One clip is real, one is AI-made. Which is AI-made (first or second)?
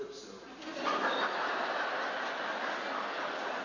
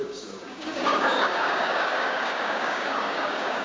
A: second